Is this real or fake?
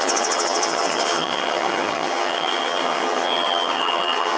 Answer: fake